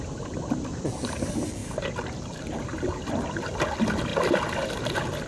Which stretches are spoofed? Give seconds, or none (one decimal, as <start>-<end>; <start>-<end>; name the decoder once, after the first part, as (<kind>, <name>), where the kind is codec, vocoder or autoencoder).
1.6-2.6 (vocoder, BigVGAN v2)